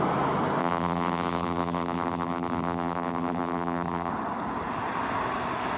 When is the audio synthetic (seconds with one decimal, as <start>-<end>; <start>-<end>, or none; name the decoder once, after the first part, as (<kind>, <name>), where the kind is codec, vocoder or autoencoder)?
0.6-4.1 (vocoder, BigVGAN v2)